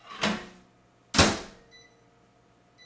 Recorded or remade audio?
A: recorded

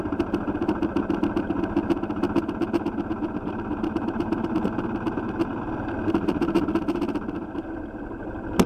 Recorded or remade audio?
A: recorded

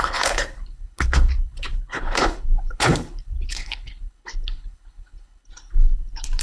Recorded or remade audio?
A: remade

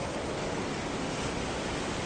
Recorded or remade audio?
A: recorded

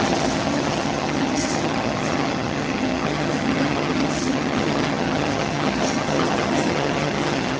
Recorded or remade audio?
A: remade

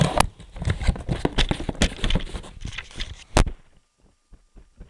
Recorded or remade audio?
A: recorded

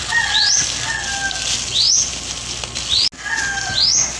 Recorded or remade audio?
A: recorded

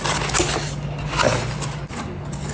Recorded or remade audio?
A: recorded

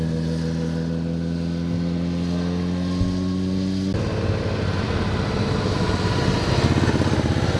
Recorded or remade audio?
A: recorded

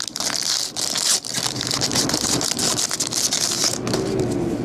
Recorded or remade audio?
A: recorded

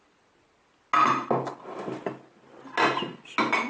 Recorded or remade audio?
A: recorded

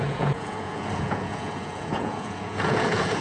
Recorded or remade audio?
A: remade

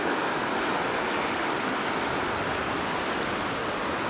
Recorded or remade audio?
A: recorded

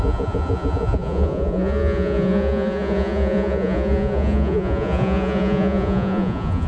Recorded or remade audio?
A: remade